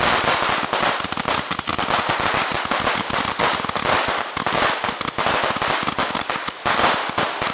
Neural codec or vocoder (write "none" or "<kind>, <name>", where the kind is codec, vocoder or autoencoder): none